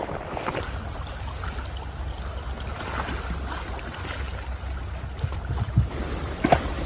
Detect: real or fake real